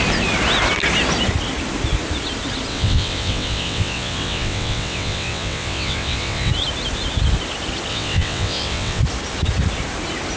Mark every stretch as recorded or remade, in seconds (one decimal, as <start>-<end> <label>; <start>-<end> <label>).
0.0-2.7 recorded; 2.7-6.5 remade; 6.5-7.9 recorded; 7.9-9.0 remade; 9.0-10.4 recorded